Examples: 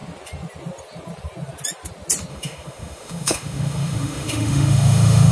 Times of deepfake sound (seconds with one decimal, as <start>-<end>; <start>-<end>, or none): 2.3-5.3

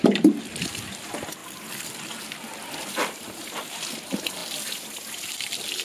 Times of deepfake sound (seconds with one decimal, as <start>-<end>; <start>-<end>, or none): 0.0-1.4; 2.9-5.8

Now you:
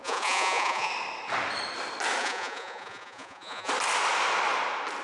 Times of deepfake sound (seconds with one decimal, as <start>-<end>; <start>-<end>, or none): 0.0-0.9; 2.2-3.7

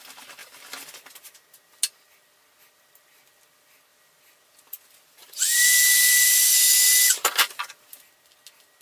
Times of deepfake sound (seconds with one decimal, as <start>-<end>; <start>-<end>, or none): 3.9-6.5

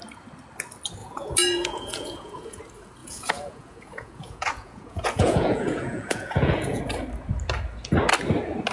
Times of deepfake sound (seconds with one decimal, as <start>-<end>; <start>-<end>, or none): 1.0-2.6; 3.0-6.8

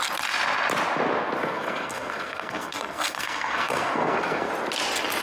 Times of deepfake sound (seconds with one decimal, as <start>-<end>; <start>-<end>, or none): 1.4-4.5

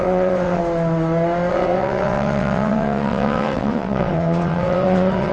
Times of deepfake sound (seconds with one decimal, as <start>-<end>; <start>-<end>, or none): 0.0-0.6; 1.5-5.3